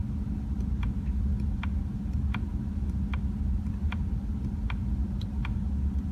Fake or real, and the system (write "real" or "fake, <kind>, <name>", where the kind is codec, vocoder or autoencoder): real